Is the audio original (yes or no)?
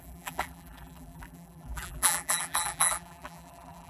no